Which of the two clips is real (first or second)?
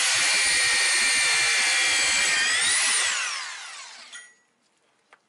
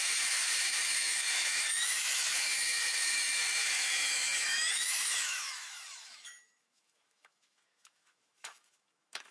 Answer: first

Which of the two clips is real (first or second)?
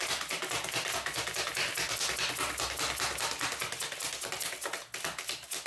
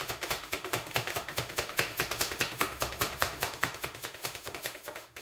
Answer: first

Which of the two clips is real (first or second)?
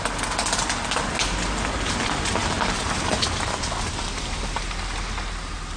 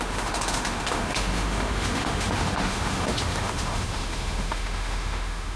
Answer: first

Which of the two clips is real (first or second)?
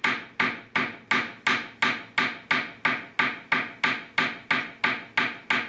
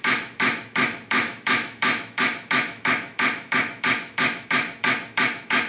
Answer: first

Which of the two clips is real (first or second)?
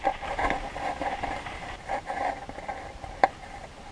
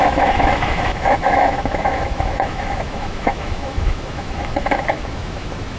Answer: first